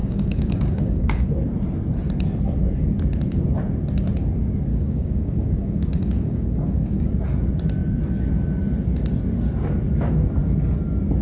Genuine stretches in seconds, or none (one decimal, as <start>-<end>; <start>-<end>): 1.3-4.7; 7.1-11.2